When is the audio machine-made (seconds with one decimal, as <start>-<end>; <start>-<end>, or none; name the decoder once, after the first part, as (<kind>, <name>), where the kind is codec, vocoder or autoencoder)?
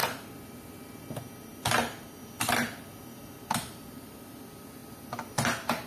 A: none